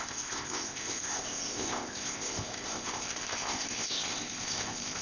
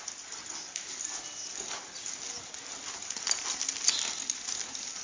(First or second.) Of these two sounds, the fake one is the first